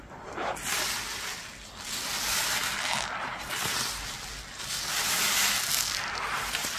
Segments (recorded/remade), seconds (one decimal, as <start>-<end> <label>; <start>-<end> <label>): 0.0-6.8 recorded